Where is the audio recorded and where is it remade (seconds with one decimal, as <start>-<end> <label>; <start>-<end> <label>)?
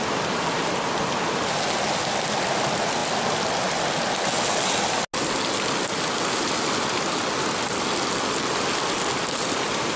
0.0-10.0 recorded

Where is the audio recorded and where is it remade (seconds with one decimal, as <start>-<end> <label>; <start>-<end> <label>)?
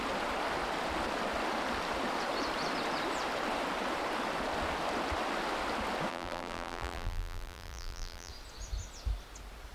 0.0-6.1 recorded; 6.1-8.3 remade; 8.3-9.7 recorded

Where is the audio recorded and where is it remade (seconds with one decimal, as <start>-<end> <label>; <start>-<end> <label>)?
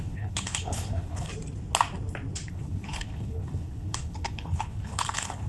0.0-1.3 remade; 1.3-2.5 recorded; 2.5-5.5 remade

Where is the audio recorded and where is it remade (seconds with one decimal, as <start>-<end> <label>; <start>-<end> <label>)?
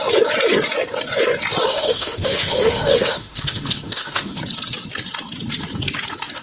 0.0-1.7 recorded; 1.7-4.4 remade; 4.4-6.4 recorded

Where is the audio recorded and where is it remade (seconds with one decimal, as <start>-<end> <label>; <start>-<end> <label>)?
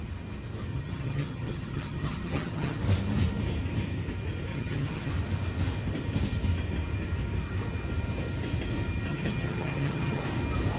0.0-0.7 recorded; 0.7-2.8 remade; 2.8-4.5 recorded; 4.5-5.1 remade; 5.1-9.1 recorded; 9.1-10.2 remade; 10.2-10.8 recorded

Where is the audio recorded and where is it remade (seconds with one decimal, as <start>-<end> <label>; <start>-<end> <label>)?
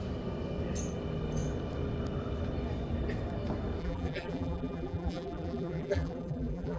0.0-3.8 recorded; 3.8-6.8 remade